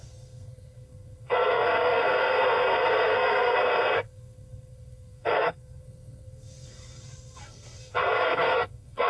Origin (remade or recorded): remade